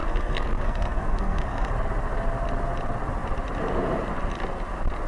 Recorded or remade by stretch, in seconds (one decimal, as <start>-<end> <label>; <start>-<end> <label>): 0.0-1.7 remade; 1.7-5.1 recorded